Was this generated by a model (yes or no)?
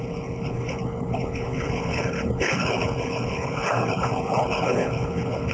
yes